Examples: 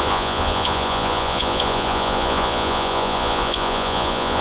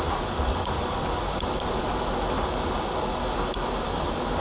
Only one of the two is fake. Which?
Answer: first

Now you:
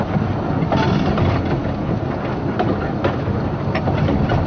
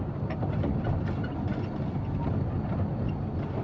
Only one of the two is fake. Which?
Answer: second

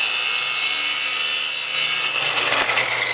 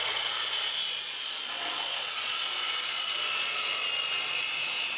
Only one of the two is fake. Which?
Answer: second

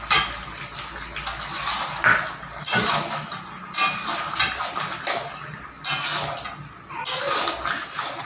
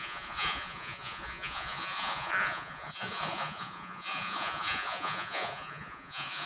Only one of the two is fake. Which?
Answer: second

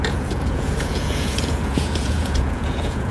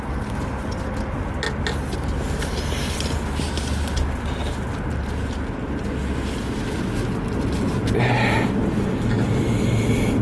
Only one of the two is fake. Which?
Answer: first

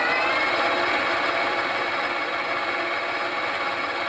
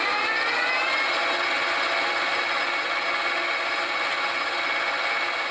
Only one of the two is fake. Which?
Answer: first